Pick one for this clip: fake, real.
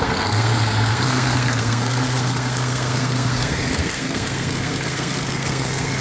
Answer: fake